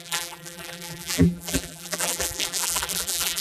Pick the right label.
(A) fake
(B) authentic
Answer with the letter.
A